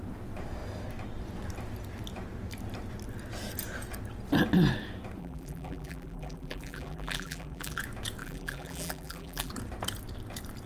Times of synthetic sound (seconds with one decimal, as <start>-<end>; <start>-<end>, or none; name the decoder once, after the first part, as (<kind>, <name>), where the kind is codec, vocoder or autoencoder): 5.2-7.8 (vocoder, BigVGAN v2); 8.2-9.5